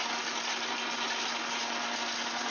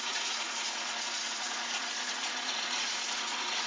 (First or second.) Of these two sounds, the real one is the first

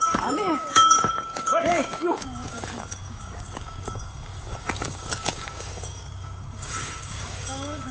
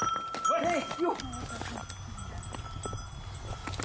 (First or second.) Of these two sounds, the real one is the second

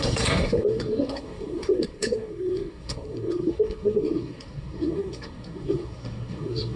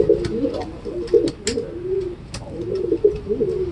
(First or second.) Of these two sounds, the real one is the second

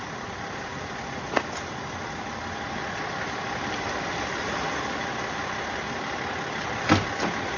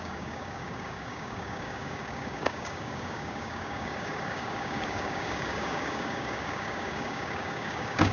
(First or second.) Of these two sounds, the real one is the first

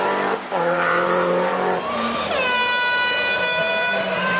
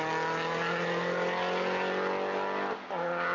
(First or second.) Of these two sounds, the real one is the second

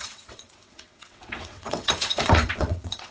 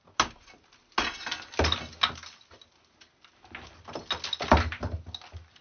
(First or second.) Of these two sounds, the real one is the second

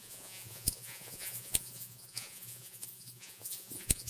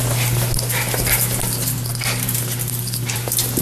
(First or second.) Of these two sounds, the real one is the second